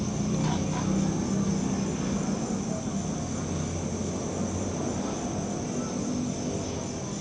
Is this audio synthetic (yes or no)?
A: no